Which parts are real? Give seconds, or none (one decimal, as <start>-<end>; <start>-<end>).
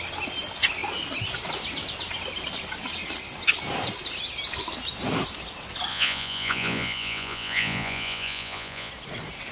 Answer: 0.0-5.9; 8.9-9.5